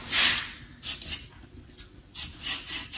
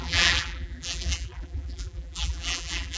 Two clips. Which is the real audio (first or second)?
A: first